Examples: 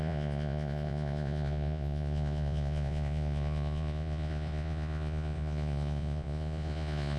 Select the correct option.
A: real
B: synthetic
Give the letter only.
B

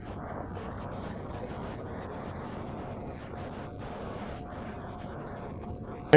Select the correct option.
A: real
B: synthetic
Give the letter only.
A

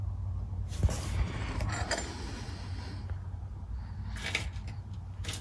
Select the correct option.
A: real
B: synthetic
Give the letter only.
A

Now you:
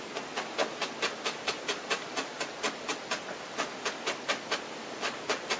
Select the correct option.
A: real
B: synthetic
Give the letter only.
A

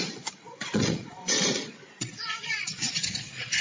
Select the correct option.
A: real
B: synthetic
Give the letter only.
B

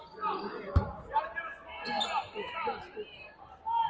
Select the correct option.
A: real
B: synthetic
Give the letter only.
A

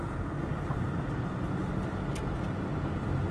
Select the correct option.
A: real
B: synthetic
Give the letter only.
A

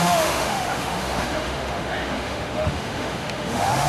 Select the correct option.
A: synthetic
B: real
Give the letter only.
A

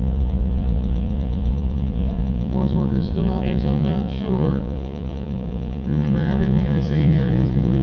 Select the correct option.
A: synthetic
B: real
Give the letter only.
A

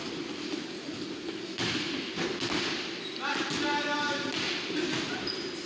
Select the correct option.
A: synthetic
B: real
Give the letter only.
B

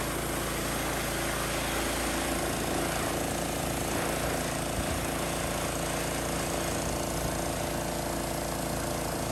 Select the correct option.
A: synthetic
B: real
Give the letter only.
B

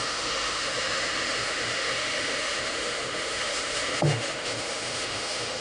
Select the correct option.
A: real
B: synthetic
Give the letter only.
B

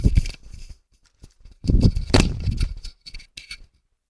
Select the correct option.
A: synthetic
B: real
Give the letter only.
B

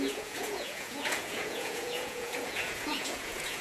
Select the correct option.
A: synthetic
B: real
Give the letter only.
A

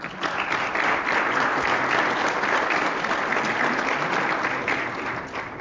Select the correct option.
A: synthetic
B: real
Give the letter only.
B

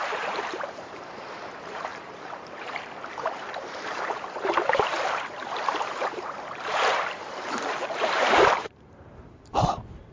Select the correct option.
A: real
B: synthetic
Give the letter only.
B